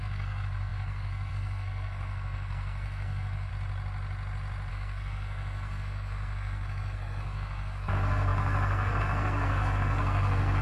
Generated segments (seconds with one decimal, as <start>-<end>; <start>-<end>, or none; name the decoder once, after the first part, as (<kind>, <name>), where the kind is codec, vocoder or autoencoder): 0.0-3.5 (codec, SNAC); 4.7-10.6